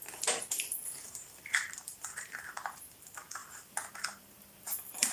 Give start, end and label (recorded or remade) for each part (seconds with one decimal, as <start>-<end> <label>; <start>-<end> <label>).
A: 0.0-0.8 recorded; 0.8-2.9 remade; 2.9-5.1 recorded